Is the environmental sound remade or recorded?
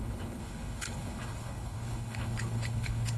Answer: remade